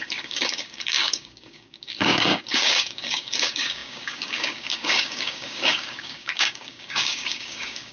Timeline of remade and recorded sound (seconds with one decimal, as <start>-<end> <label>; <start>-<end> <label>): 0.0-7.9 remade